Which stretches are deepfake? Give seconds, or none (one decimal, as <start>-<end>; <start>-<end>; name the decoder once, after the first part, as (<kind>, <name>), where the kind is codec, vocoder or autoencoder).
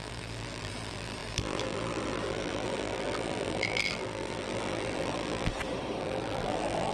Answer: 0.0-5.5 (vocoder, BigVGAN v2); 6.0-6.9